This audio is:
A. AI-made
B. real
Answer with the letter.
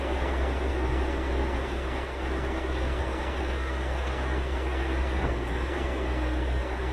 A